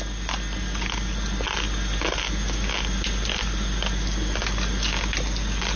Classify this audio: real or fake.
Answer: real